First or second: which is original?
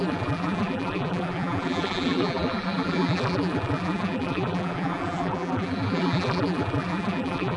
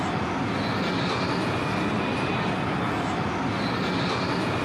second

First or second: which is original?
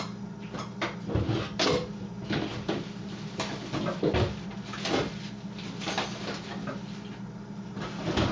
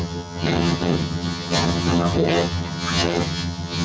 first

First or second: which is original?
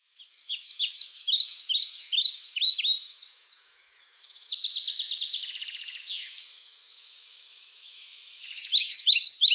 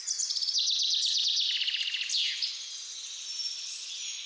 second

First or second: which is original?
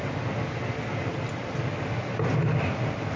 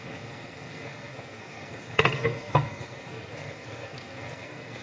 first